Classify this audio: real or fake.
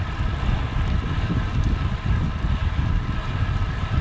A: fake